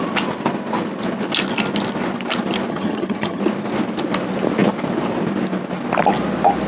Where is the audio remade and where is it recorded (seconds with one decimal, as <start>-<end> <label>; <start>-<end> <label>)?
0.0-2.7 recorded; 2.7-3.4 remade; 3.4-6.7 recorded